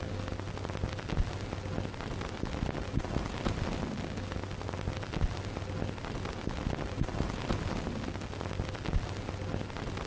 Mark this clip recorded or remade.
recorded